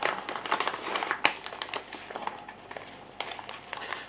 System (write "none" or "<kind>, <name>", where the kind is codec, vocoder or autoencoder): none